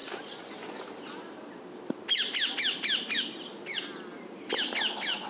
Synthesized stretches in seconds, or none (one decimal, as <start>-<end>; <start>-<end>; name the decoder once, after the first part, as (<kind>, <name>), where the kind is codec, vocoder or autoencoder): none